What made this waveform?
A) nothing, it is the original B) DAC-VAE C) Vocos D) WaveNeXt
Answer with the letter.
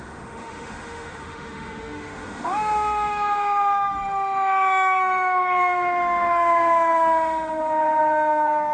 B